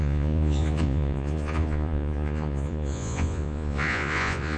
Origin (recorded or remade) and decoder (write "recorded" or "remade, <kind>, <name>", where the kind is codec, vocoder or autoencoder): remade, vocoder, Vocos